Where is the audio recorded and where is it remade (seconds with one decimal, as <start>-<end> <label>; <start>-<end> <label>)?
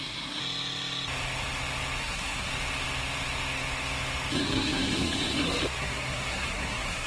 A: 0.0-0.4 remade; 0.4-2.0 recorded; 2.0-2.5 remade; 2.5-4.3 recorded; 4.3-7.1 remade